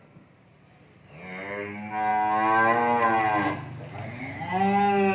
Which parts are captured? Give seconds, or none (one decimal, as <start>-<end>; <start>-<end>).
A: 0.0-5.1